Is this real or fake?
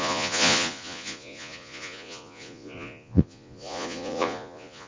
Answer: fake